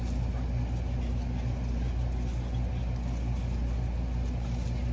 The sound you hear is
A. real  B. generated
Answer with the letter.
A